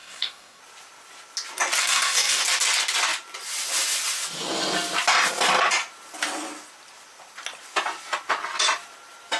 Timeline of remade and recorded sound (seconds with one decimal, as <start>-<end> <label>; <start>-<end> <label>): 0.0-0.6 remade; 0.6-1.8 recorded; 1.8-2.4 remade; 2.4-9.4 recorded